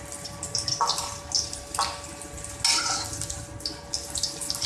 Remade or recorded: recorded